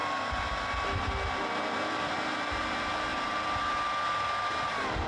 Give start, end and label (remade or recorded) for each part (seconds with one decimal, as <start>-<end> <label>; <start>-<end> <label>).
0.0-5.1 recorded